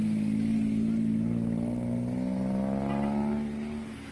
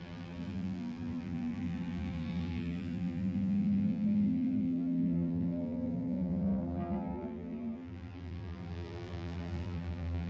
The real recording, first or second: first